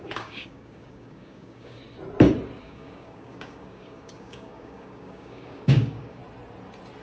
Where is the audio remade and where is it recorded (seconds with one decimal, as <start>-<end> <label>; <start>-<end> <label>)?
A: 0.0-1.8 remade; 1.8-2.6 recorded; 2.6-6.2 remade; 6.2-7.0 recorded